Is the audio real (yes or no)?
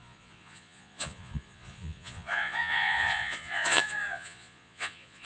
no